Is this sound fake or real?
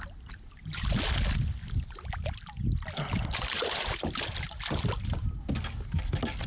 real